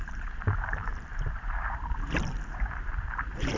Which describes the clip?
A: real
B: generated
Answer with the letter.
B